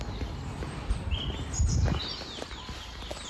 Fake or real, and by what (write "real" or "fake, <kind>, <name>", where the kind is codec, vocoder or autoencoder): real